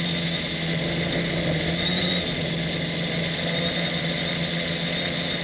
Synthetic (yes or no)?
no